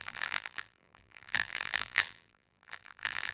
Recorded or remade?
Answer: remade